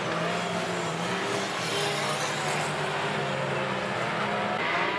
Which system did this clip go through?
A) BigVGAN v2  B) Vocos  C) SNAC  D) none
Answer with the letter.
D